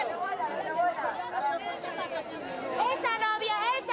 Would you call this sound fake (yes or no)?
no